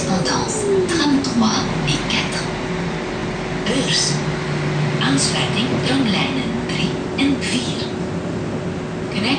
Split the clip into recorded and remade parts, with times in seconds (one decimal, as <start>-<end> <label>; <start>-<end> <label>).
0.0-9.4 recorded